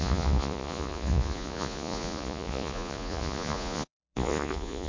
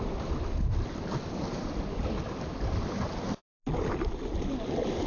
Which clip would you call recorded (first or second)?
second